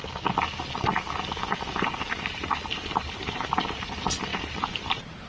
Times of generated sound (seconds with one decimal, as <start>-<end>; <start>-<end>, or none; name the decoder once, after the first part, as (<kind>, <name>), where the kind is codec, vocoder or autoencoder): 2.7-3.6 (vocoder, BigVGAN v2); 4.3-5.3